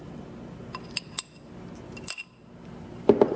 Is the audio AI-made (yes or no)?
no